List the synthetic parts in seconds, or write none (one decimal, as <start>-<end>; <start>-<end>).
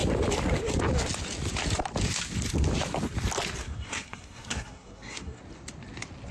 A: 3.6-5.4